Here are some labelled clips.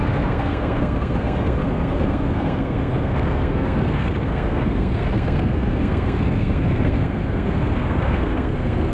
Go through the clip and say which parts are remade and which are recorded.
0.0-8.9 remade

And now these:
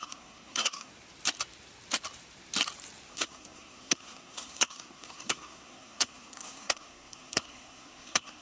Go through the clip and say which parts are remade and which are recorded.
0.0-0.9 remade; 0.9-3.1 recorded; 3.1-8.4 remade

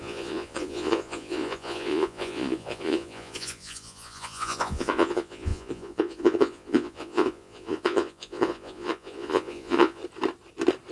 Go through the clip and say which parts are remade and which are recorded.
0.0-10.0 remade; 10.0-10.9 recorded

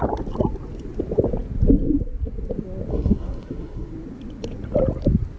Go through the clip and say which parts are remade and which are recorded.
0.0-2.9 recorded; 2.9-3.9 remade; 3.9-5.4 recorded

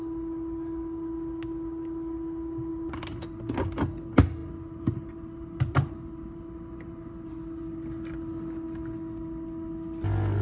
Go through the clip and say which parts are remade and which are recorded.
0.0-2.7 recorded; 2.7-3.4 remade; 3.4-4.4 recorded; 4.4-7.6 remade; 7.6-10.4 recorded

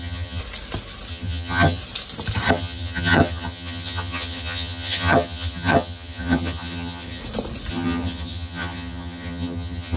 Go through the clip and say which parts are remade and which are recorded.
0.0-0.4 remade; 0.4-1.1 recorded; 1.1-1.8 remade; 1.8-2.5 recorded; 2.5-7.2 remade; 7.2-7.7 recorded; 7.7-10.0 remade

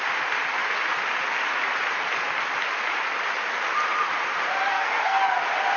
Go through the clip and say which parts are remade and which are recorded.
0.0-4.7 recorded; 4.7-5.2 remade; 5.2-5.8 recorded